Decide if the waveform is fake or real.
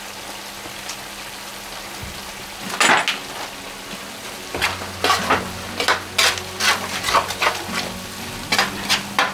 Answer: real